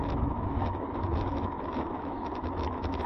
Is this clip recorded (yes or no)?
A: no